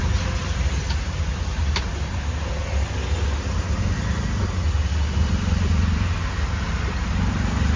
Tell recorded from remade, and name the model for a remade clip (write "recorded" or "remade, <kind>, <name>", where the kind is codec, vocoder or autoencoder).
recorded